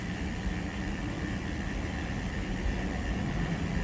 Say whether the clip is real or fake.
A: fake